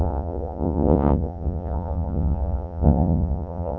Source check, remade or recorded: remade